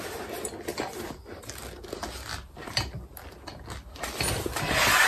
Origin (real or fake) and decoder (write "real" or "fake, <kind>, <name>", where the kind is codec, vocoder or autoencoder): real